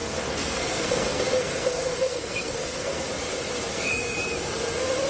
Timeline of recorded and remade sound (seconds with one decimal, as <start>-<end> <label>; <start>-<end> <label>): 0.0-3.1 remade; 3.1-3.7 recorded; 3.7-4.2 remade; 4.2-5.1 recorded

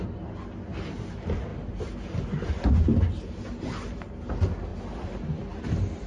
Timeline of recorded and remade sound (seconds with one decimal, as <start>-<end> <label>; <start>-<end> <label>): 0.0-6.1 recorded